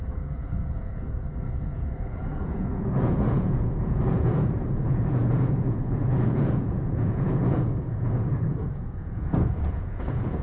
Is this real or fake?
fake